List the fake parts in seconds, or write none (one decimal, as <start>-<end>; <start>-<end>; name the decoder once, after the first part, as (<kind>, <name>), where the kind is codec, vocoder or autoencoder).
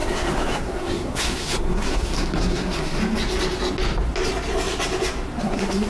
0.0-3.0 (codec, SNAC); 5.4-5.9